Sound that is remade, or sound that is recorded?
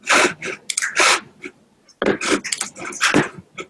recorded